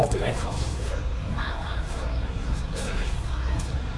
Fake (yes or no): yes